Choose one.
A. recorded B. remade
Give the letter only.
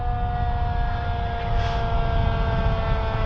A